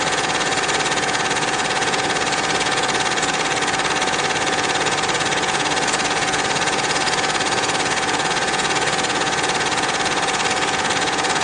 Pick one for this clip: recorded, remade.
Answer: remade